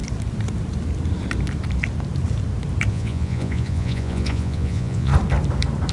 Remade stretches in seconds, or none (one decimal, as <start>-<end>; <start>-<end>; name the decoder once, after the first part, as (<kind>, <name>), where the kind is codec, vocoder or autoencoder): 2.9-5.1 (vocoder, Vocos)